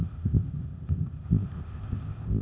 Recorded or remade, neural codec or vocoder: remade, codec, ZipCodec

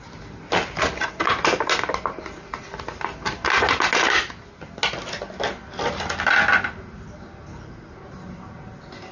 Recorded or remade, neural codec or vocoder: recorded